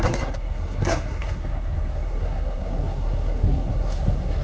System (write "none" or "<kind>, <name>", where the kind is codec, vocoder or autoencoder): codec, SNAC